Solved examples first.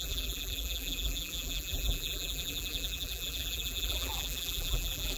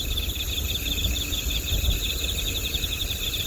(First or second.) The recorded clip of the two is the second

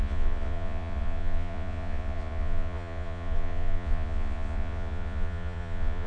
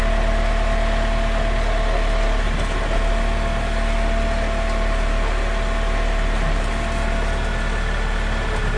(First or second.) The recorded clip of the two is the second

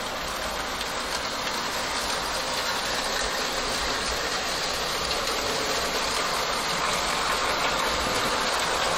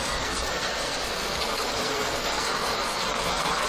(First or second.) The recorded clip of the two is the first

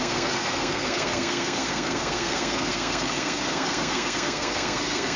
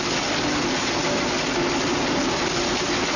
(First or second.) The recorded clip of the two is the second